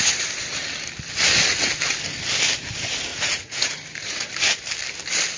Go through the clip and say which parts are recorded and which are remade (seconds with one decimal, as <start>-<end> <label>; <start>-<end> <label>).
0.0-3.1 recorded; 3.1-4.3 remade; 4.3-5.4 recorded